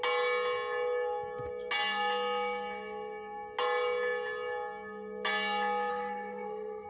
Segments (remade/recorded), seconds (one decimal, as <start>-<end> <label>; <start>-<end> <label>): 0.0-5.9 recorded; 5.9-6.9 remade